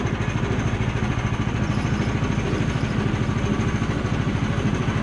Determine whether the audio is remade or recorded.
recorded